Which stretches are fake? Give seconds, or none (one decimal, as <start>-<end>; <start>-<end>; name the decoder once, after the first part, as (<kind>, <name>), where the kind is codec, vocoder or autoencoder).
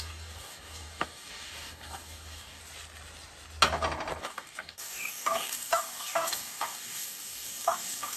0.0-2.6 (codec, DAC); 4.2-8.2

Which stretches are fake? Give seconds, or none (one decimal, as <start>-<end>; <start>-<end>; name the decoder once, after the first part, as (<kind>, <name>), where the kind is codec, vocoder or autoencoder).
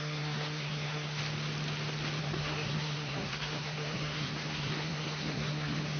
0.0-1.2 (codec, SNAC); 2.2-6.0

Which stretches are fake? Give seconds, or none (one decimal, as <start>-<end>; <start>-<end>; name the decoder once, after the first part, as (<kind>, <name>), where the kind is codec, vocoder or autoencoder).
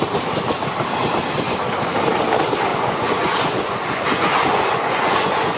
2.7-5.6 (vocoder, Vocos)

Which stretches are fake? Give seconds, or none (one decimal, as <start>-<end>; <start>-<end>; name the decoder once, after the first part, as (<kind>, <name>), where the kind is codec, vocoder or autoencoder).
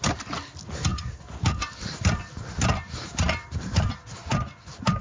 0.9-3.9 (vocoder, BigVGAN v2)